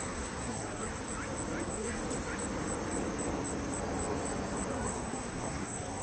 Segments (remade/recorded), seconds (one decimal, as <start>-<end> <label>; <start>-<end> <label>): 0.0-0.9 remade; 0.9-1.6 recorded; 1.6-2.0 remade; 2.0-4.7 recorded; 4.7-6.0 remade